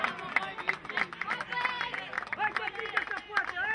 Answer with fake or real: real